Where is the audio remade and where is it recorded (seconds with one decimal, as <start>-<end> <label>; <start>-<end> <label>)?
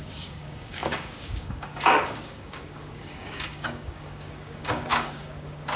0.0-5.8 remade